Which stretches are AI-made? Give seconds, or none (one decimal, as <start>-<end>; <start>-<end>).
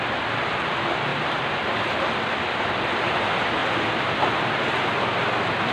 1.1-3.0; 3.6-4.6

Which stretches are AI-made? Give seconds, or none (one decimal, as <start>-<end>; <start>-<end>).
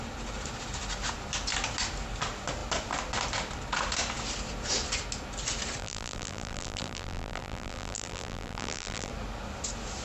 5.8-9.1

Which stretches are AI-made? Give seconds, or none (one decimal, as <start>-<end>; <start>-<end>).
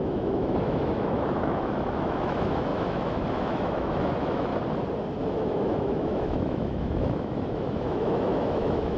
0.0-4.5; 5.3-9.0